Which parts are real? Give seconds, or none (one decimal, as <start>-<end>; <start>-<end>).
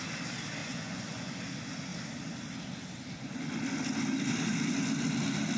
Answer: 0.0-0.6; 1.4-5.6